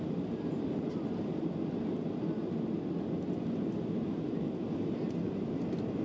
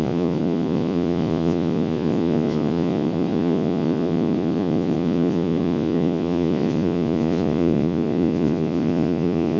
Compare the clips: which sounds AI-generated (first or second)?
second